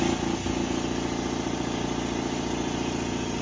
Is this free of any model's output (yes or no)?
yes